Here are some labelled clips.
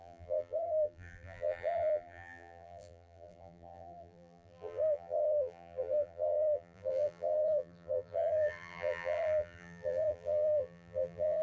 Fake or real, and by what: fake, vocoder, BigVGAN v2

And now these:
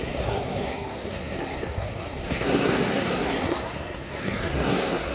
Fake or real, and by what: fake, codec, SNAC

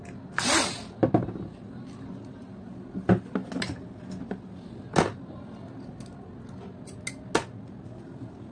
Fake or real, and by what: real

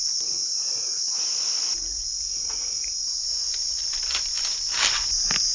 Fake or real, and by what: real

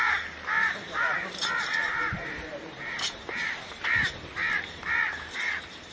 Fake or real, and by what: fake, vocoder, BigVGAN v2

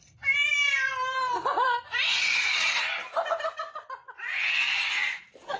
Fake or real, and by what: real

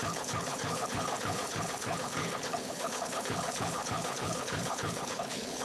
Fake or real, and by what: fake, codec, HILCodec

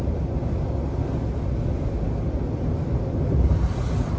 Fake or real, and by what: real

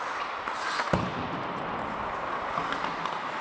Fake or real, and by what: real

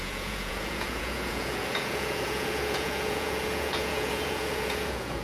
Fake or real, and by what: fake, vocoder, Vocos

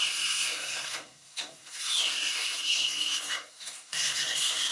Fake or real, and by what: fake, codec, SNAC